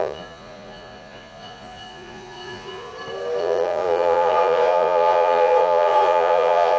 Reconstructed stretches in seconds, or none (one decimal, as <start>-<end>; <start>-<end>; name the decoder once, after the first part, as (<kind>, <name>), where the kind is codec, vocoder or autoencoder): 0.0-2.9 (vocoder, Vocos); 3.4-6.8